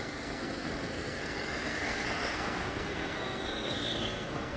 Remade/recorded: remade